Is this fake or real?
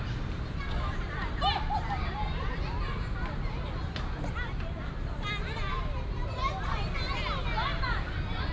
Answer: real